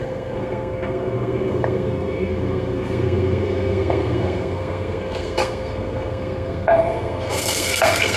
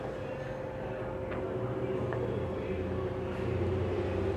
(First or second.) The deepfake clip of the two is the first